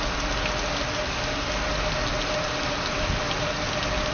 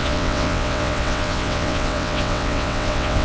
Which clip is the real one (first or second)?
first